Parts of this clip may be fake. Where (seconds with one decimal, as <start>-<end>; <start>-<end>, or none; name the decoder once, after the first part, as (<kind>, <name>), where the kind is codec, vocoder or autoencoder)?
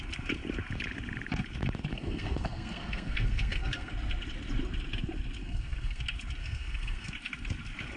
1.9-3.9 (codec, SNAC); 5.4-6.0; 6.4-7.1